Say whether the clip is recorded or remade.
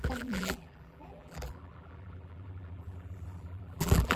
remade